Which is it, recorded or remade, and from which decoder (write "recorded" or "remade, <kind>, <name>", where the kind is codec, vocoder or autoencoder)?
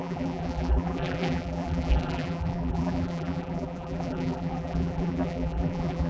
remade, vocoder, BigVGAN v2